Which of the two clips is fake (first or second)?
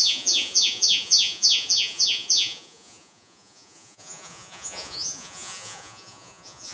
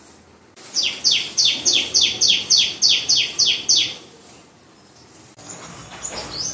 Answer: first